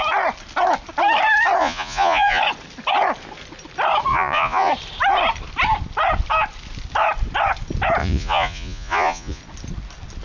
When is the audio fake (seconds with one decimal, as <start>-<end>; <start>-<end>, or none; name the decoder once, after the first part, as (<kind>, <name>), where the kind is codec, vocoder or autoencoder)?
1.6-2.4 (vocoder, Vocos); 4.1-4.7; 8.0-9.4